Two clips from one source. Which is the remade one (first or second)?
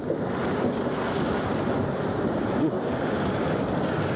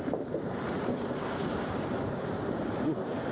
second